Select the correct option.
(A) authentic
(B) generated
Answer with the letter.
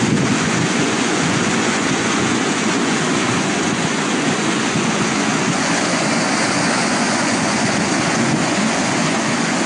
B